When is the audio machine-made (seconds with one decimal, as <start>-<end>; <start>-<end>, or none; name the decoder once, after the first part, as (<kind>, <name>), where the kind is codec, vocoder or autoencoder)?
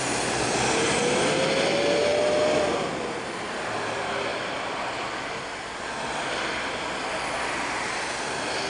4.3-4.8 (vocoder, BigVGAN v2)